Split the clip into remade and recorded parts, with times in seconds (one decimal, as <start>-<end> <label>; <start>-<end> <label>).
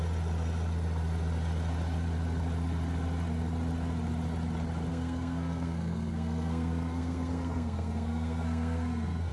0.0-4.9 recorded; 4.9-9.3 remade